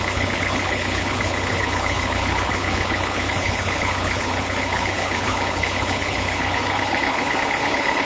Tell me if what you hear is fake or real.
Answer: fake